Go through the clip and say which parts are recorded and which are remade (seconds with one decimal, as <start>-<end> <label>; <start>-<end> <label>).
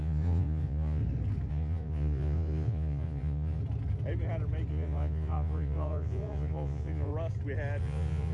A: 0.0-1.0 remade; 1.0-1.5 recorded; 1.5-3.6 remade; 3.6-4.7 recorded; 4.7-7.1 remade; 7.1-7.8 recorded; 7.8-8.3 remade